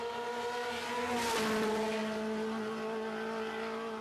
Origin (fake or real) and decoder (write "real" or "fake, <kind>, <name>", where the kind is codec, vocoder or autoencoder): real